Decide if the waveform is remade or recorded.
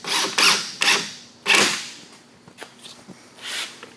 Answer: recorded